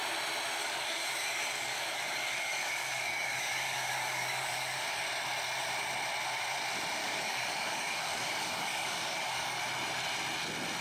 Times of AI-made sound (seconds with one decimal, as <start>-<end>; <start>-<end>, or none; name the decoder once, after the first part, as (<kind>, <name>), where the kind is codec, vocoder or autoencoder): 0.6-5.0 (codec, DAC); 7.0-9.6